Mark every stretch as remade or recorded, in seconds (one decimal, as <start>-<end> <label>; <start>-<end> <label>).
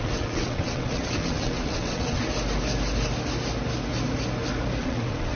0.0-2.2 remade; 2.2-4.8 recorded; 4.8-5.4 remade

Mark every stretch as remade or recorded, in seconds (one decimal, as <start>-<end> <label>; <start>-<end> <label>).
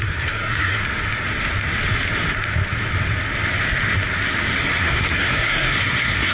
0.0-0.8 remade; 0.8-4.6 recorded; 4.6-6.3 remade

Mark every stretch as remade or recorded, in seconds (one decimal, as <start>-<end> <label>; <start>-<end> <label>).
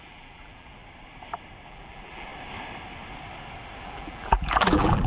0.0-0.8 remade; 0.8-1.7 recorded; 1.7-2.3 remade; 2.3-3.8 recorded; 3.8-5.1 remade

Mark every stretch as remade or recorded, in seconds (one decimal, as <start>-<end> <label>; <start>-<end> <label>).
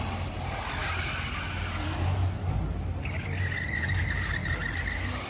0.0-5.3 recorded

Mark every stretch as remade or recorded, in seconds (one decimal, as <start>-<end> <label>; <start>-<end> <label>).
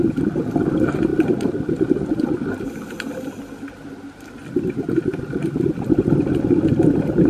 0.0-1.1 remade; 1.1-1.6 recorded; 1.6-4.4 remade; 4.4-5.2 recorded; 5.2-7.3 remade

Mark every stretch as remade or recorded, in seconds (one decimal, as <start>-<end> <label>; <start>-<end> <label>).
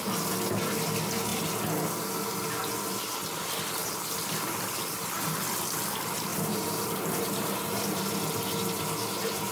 0.0-6.3 recorded; 6.3-8.1 remade; 8.1-9.5 recorded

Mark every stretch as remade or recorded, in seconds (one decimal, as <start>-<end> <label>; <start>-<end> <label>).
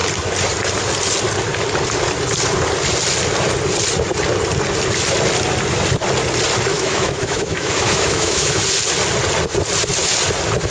0.0-6.7 recorded; 6.7-8.6 remade; 8.6-10.7 recorded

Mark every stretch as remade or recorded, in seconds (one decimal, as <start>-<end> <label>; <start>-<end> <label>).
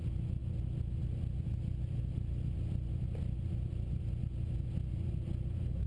0.0-5.9 recorded